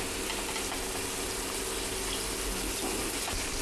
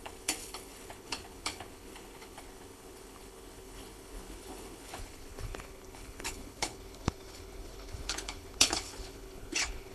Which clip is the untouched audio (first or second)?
first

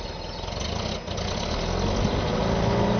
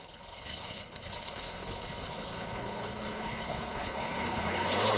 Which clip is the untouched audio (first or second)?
first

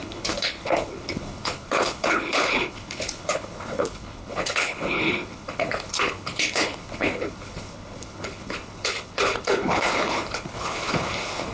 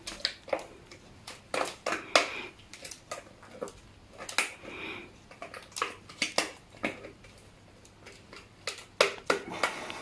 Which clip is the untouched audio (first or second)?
second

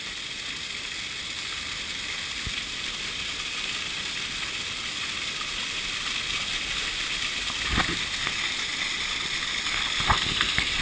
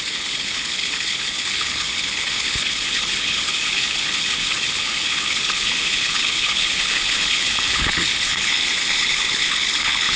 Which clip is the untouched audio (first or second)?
first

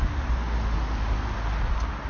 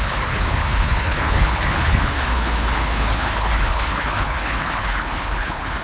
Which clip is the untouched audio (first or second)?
first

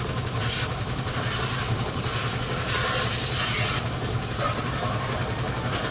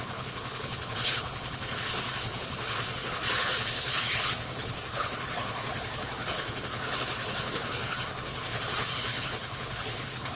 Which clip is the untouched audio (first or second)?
first